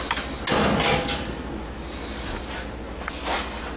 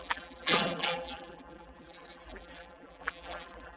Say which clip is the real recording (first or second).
first